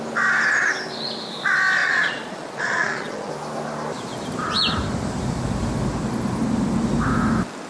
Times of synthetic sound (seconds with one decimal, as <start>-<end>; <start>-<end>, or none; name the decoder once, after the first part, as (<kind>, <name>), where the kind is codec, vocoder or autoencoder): 1.8-3.3 (vocoder, Vocos)